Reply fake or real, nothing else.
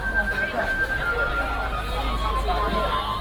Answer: real